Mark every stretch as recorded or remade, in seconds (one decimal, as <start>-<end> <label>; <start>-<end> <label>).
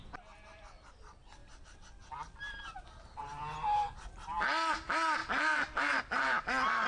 0.0-6.9 recorded